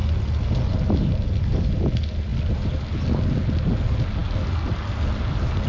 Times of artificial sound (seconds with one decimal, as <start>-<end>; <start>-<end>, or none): none